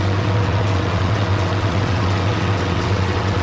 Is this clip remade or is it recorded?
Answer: remade